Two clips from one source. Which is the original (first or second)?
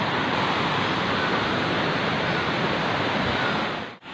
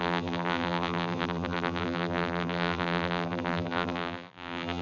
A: first